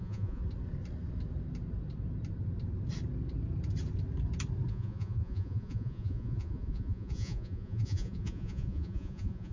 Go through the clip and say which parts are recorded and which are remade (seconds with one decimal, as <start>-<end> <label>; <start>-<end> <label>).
0.0-0.4 remade; 0.4-4.7 recorded; 4.7-9.5 remade